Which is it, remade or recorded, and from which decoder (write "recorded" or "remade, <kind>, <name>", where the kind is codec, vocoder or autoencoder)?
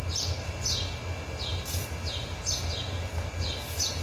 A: recorded